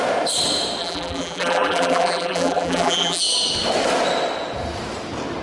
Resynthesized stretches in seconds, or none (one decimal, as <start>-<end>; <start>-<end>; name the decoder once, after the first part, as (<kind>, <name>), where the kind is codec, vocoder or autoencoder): 0.8-3.2 (vocoder, BigVGAN v2)